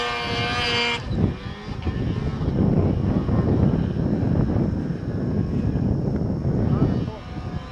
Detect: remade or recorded recorded